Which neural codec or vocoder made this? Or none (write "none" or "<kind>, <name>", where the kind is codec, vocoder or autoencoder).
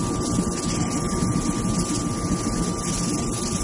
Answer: none